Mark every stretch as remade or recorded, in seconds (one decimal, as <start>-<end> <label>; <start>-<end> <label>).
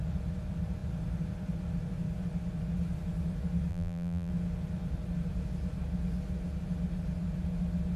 0.0-3.7 recorded; 3.7-4.3 remade; 4.3-8.0 recorded